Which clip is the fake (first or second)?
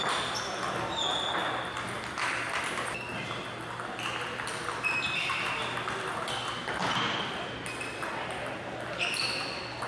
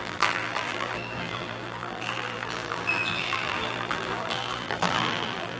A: second